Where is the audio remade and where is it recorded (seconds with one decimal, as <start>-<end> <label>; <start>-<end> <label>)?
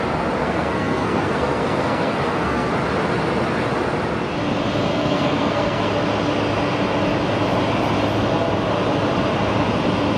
0.0-0.4 recorded; 0.4-2.7 remade; 2.7-4.9 recorded; 4.9-5.9 remade; 5.9-10.2 recorded